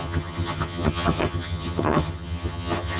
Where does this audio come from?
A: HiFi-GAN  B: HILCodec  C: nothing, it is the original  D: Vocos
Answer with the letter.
A